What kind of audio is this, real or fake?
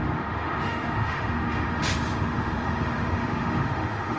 fake